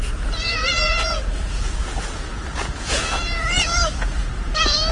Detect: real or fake fake